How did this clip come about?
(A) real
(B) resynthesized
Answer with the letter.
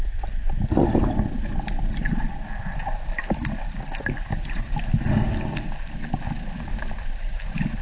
A